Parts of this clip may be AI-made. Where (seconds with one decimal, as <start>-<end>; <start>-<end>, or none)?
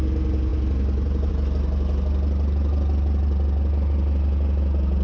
none